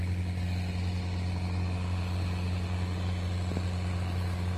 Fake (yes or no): no